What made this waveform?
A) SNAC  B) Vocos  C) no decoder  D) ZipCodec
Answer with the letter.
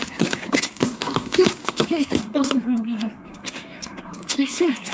A